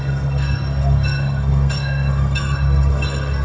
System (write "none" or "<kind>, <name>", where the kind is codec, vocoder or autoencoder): codec, SNAC